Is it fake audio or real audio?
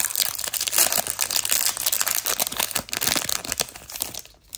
real